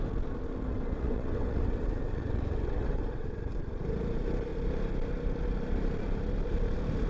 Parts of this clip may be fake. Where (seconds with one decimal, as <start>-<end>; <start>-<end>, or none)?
0.7-3.5